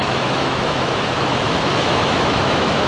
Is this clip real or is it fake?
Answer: fake